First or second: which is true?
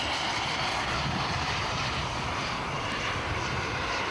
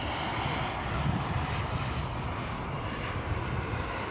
second